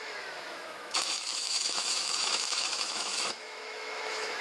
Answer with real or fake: fake